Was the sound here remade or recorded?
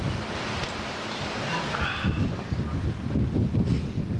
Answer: recorded